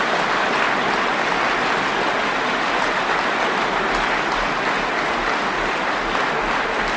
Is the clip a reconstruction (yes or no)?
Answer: no